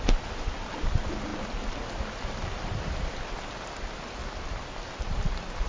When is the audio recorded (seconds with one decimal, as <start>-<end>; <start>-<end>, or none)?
1.3-2.1